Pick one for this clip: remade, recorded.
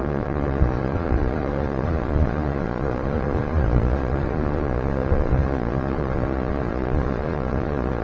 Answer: remade